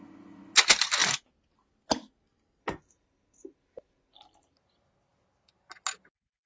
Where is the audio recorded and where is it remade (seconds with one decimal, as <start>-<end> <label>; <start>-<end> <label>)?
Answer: 0.0-6.5 recorded